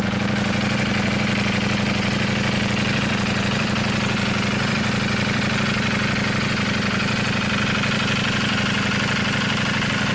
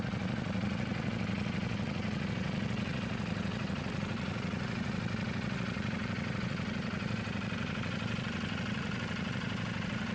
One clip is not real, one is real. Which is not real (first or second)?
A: second